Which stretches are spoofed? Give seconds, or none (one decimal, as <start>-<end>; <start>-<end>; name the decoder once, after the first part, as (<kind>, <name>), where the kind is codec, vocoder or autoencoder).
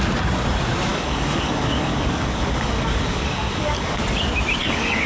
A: 0.9-4.0 (codec, DAC); 4.6-5.1